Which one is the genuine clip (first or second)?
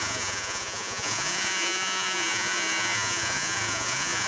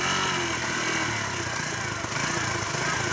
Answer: second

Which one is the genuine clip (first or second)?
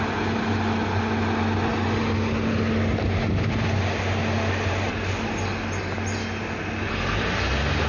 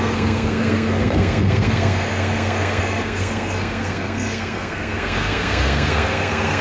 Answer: first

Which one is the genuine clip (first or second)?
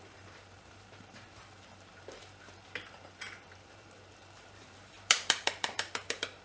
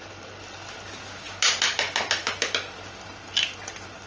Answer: second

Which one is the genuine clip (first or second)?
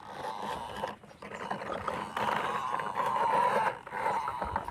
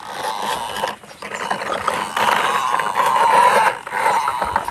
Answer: second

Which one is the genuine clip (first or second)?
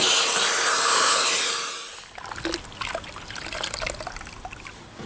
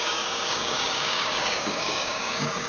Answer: first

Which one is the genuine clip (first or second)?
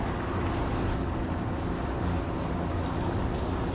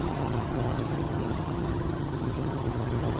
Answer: first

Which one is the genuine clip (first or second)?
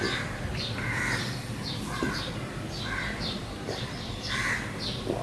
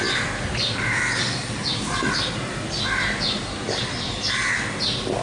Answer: second